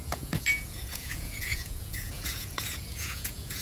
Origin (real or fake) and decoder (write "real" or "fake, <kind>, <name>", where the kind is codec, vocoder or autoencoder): fake, vocoder, Vocos